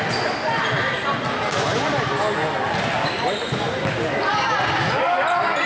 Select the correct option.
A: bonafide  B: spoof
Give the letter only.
A